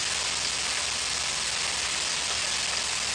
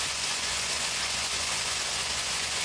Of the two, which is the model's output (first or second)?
second